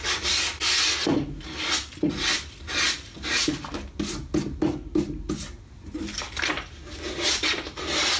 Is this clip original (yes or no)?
yes